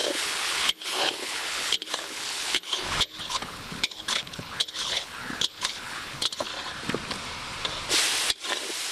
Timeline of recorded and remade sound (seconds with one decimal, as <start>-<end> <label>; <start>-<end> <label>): 0.0-6.5 remade; 6.5-8.9 recorded